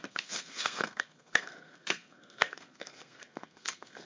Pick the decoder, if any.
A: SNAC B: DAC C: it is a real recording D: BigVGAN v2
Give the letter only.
A